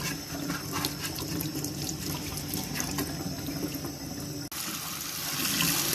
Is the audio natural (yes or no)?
yes